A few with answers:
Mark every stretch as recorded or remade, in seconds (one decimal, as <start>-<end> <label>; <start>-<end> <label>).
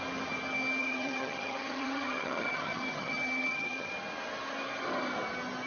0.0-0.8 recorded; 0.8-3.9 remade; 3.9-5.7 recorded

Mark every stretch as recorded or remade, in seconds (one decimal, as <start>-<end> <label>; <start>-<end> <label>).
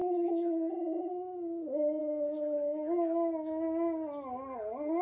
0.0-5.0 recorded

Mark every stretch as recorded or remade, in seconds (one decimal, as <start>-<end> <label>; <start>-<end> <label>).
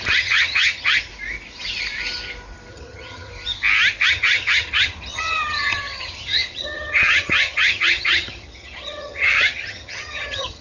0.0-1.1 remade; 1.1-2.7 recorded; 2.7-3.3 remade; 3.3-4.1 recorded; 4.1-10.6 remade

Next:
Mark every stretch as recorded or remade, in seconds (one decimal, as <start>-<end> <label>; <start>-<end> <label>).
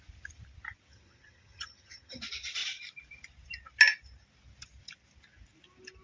0.0-0.9 recorded; 0.9-2.2 remade; 2.2-6.0 recorded